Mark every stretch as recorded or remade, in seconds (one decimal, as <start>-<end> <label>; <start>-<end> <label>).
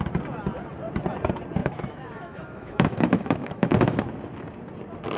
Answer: 0.0-1.6 recorded; 1.6-4.0 remade; 4.0-5.2 recorded